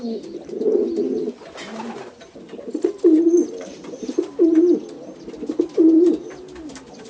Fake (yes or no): no